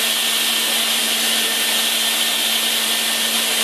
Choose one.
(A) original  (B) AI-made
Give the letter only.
A